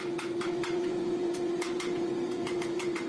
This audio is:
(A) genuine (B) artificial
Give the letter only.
B